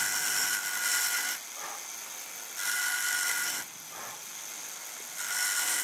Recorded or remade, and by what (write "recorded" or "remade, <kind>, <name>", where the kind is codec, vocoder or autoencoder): recorded